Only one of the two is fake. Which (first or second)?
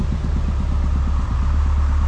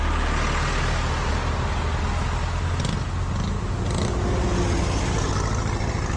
first